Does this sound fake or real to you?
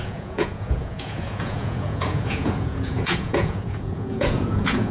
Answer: fake